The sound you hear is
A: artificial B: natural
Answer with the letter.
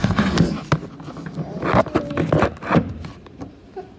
B